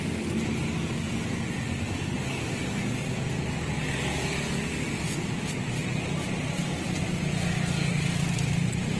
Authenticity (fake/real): real